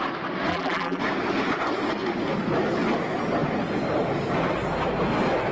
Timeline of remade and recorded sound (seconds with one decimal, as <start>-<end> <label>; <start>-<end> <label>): 0.0-0.5 recorded; 0.5-1.0 remade; 1.0-5.5 recorded

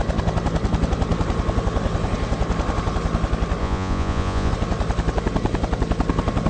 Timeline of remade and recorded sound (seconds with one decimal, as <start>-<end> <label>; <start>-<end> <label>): 0.0-3.6 recorded; 3.6-4.5 remade; 4.5-6.5 recorded